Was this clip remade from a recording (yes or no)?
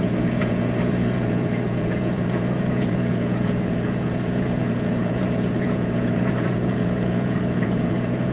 yes